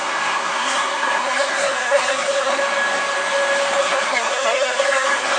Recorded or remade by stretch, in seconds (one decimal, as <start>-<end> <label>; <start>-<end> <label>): 0.0-2.6 remade; 2.6-3.8 recorded; 3.8-5.4 remade